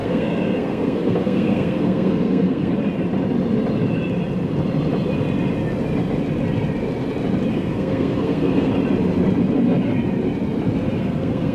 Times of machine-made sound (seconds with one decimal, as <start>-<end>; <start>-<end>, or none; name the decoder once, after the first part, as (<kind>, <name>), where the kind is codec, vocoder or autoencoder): 0.0-2.7 (codec, SNAC); 7.5-8.7; 11.0-11.5